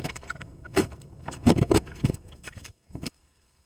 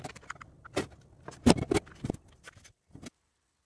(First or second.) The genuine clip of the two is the second